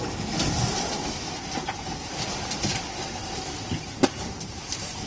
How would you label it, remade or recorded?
recorded